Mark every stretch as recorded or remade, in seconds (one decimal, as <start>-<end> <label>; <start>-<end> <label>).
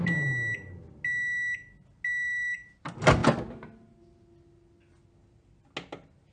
0.0-6.3 recorded